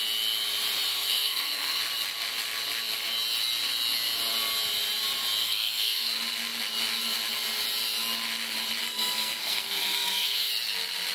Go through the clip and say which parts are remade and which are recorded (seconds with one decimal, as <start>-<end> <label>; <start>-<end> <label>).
0.0-0.9 recorded; 0.9-1.8 remade; 1.8-5.4 recorded; 5.4-6.1 remade; 6.1-8.8 recorded; 8.8-10.5 remade; 10.5-11.1 recorded